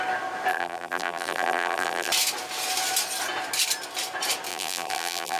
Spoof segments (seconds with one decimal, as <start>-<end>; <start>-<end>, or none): 0.5-2.1; 4.5-5.4